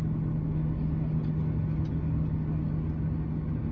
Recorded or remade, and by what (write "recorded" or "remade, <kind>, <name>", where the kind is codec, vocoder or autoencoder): recorded